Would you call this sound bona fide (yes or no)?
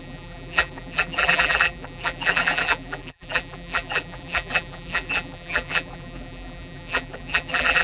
no